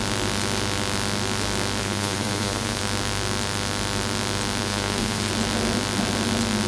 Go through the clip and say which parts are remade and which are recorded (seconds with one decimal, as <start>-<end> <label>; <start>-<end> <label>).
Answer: 0.0-1.8 recorded; 1.8-2.8 remade; 2.8-4.6 recorded; 4.6-5.3 remade; 5.3-6.7 recorded